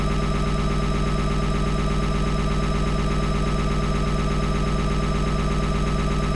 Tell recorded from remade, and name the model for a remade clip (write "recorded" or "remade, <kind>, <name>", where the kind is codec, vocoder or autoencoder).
recorded